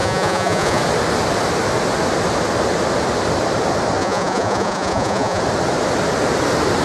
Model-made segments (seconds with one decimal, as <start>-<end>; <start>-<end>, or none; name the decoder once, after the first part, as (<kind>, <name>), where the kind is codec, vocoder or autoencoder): 0.0-0.8 (vocoder, Vocos); 4.0-5.4